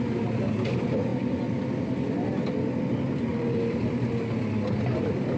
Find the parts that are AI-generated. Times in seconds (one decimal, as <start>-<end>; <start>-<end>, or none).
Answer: 3.3-4.1